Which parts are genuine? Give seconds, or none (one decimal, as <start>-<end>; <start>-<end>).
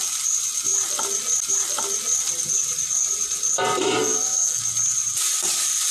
0.0-4.0; 4.6-5.9